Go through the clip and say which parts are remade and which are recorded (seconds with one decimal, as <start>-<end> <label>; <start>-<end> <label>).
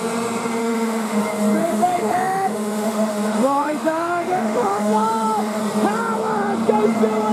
0.0-0.6 recorded; 0.6-1.2 remade; 1.2-1.6 recorded; 1.6-5.6 remade; 5.6-7.3 recorded